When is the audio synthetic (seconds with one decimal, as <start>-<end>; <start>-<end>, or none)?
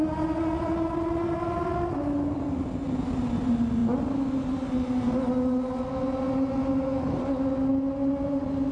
none